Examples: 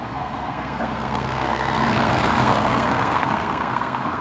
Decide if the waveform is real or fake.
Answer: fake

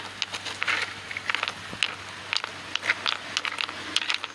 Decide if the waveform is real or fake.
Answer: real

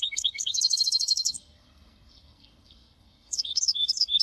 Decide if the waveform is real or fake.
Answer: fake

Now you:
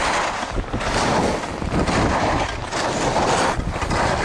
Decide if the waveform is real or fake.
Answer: real